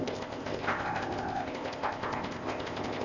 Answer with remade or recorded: remade